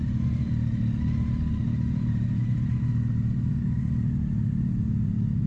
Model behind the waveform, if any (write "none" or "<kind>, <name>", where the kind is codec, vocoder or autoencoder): none